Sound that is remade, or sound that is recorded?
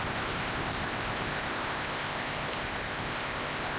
remade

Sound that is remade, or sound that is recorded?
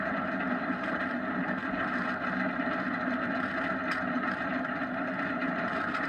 recorded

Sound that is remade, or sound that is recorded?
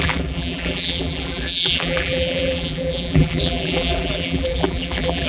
remade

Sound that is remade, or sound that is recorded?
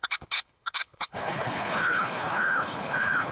remade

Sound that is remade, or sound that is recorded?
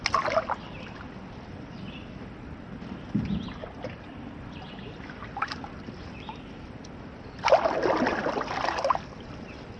recorded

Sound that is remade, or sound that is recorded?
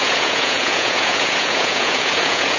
remade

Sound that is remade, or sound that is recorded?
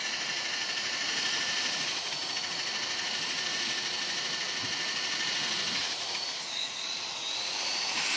remade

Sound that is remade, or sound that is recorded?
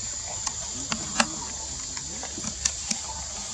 recorded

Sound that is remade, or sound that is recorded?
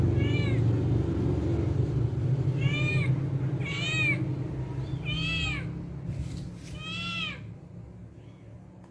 recorded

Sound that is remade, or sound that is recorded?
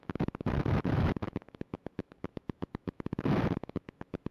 remade